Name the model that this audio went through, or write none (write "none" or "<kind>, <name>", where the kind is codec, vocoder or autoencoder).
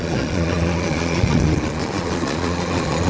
vocoder, Vocos